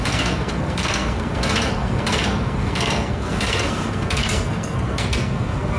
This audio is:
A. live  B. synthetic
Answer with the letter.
B